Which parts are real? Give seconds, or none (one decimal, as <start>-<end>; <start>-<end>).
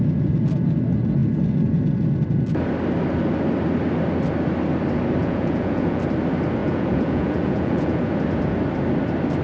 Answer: 0.0-5.2; 6.0-6.6; 8.1-9.4